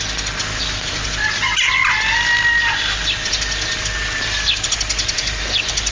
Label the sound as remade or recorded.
recorded